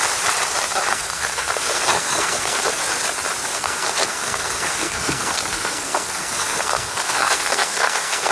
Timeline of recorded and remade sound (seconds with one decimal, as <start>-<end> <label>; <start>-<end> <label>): 0.0-0.9 recorded; 0.9-2.8 remade; 2.8-3.5 recorded; 3.5-8.3 remade